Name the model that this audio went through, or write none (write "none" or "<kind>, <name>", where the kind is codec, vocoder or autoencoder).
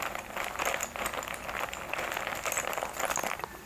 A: none